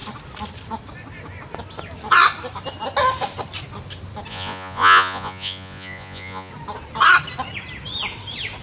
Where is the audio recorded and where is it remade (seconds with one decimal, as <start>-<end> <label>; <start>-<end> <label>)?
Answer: 0.0-4.3 recorded; 4.3-6.5 remade; 6.5-8.6 recorded